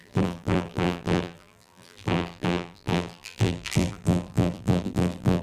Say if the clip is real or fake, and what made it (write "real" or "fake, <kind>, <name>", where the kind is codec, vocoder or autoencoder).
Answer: fake, vocoder, BigVGAN v2